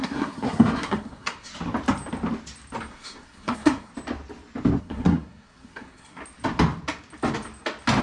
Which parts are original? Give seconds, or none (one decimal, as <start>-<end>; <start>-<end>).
1.5-2.9; 3.9-4.8; 6.2-8.0